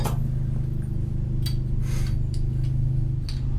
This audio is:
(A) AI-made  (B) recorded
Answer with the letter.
B